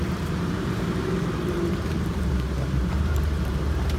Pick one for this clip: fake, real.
fake